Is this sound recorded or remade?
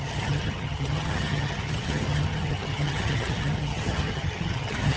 remade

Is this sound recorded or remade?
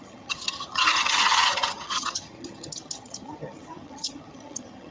remade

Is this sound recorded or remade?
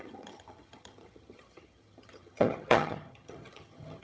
remade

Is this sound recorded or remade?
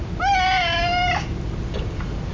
recorded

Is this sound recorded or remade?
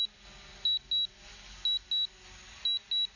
recorded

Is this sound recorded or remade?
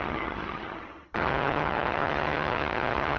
remade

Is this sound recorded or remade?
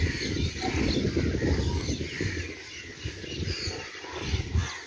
recorded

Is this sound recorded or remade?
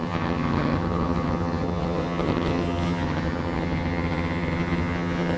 remade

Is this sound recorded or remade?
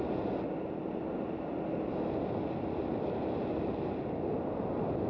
recorded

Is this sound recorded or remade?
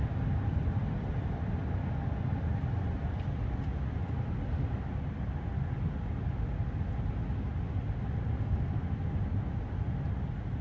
recorded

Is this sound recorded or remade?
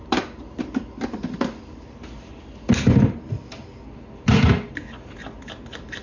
recorded